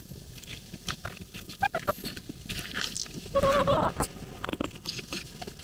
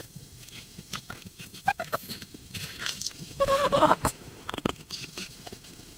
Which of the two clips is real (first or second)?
first